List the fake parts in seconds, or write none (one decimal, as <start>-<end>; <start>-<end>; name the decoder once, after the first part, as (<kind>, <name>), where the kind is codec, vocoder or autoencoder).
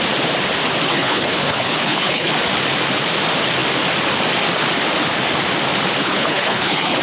0.9-2.3 (codec, HILCodec); 6.0-7.0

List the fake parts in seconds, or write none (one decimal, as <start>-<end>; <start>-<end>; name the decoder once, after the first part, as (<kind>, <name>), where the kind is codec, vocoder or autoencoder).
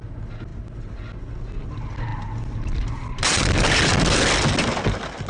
none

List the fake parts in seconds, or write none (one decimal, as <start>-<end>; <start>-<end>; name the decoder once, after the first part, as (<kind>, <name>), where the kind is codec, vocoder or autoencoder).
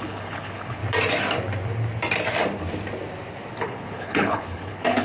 0.0-0.8 (codec, HILCodec); 3.5-5.0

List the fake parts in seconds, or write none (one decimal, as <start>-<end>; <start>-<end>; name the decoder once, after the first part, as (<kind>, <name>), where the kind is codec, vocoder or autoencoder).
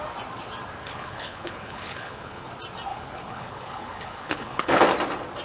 0.8-2.5 (codec, HILCodec); 2.9-4.8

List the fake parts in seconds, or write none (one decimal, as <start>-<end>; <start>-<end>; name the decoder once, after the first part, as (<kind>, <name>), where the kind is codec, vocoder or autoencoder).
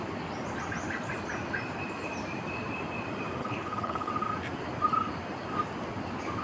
3.4-4.1 (codec, HILCodec)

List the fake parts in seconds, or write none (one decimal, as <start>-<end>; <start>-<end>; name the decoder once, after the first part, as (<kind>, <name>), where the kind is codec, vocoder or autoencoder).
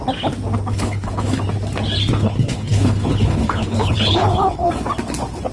0.7-1.4 (codec, HILCodec); 2.2-4.7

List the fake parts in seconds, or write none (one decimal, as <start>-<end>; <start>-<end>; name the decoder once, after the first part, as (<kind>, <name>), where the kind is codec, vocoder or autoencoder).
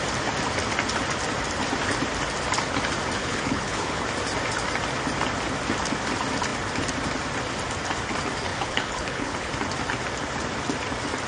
3.2-4.0 (codec, HILCodec); 8.5-9.5